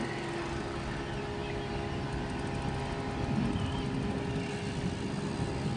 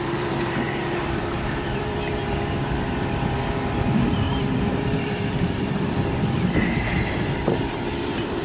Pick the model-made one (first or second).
second